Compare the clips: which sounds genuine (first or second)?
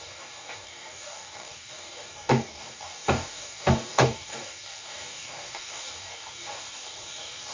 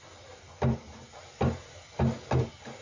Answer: second